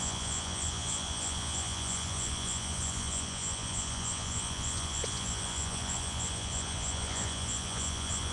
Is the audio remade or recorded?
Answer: remade